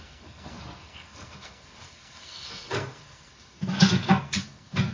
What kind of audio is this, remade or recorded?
remade